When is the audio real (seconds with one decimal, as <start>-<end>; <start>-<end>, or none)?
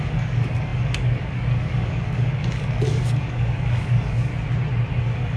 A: 4.3-4.9